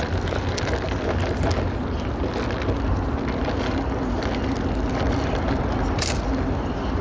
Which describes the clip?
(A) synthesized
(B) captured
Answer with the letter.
B